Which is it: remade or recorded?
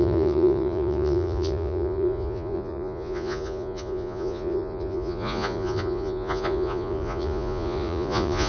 remade